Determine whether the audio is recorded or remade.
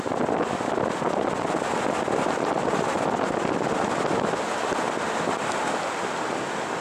recorded